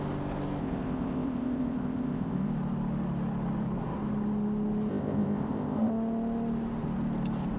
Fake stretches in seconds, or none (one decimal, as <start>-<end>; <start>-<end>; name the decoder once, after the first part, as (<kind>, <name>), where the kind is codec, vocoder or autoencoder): 0.6-2.5 (codec, ZipCodec); 4.9-5.9

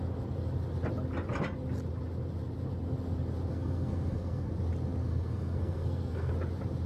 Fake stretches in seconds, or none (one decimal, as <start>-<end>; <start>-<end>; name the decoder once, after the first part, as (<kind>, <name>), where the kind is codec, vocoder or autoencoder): 3.5-4.5 (codec, SNAC); 5.0-6.3

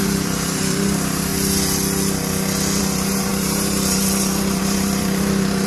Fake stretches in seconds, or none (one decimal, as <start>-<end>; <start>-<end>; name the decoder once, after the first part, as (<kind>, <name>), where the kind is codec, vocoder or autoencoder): 0.0-1.3 (vocoder, BigVGAN v2); 2.8-5.7